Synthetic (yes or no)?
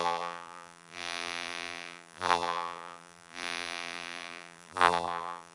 yes